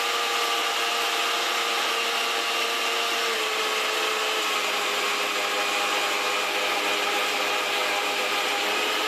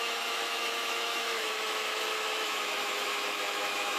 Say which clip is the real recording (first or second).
first